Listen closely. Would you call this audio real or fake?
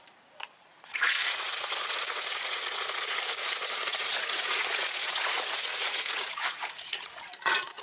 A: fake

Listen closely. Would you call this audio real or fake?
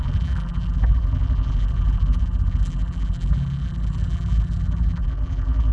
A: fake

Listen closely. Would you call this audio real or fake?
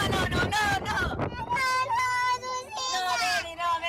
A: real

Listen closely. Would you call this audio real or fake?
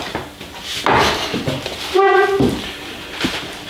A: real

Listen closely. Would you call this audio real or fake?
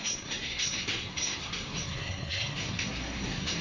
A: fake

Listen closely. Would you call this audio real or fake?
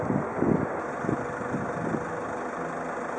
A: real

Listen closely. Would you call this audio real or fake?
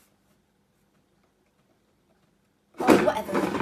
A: fake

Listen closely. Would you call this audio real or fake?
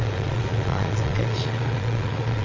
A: fake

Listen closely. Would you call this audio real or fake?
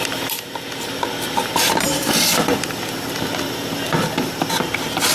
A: fake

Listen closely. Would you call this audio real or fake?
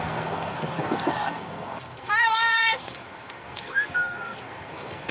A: fake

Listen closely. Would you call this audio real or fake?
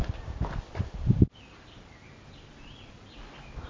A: real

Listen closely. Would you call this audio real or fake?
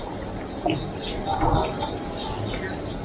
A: real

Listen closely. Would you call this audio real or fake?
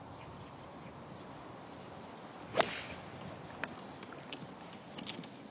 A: real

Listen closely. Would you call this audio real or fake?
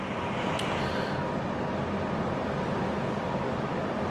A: real